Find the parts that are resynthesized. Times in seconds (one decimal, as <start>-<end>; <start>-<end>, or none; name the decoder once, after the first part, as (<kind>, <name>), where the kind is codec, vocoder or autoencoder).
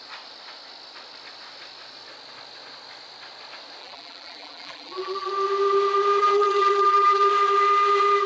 3.8-5.3 (vocoder, BigVGAN v2); 6.2-7.3